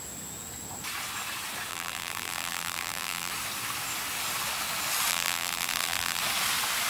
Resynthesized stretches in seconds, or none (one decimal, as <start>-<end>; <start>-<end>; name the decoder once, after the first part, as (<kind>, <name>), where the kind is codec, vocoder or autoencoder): 1.7-3.3 (vocoder, BigVGAN v2); 5.1-6.2